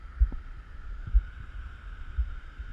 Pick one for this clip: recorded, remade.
recorded